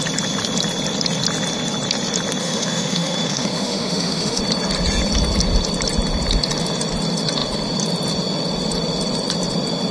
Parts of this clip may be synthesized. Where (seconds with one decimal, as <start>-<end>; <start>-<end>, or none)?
2.4-4.4